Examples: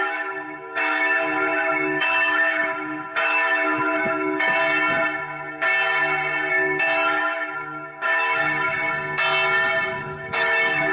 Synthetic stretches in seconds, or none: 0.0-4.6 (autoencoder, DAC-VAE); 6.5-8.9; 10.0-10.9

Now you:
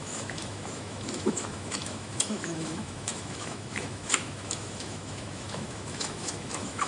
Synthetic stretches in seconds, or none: 0.0-6.9 (autoencoder, DAC-VAE)